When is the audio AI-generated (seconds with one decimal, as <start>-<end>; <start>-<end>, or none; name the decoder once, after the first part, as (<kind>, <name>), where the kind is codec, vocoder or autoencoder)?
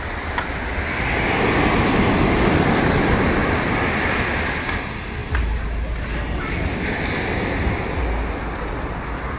3.4-4.0 (vocoder, BigVGAN v2)